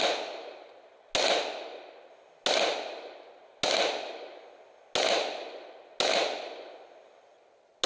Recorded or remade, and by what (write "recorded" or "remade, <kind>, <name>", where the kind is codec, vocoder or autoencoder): recorded